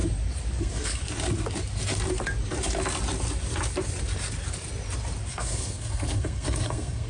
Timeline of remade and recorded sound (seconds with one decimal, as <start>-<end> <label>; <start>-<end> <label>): 0.0-0.6 recorded; 0.6-1.0 remade; 1.0-5.3 recorded; 5.3-7.1 remade